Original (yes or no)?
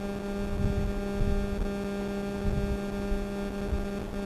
yes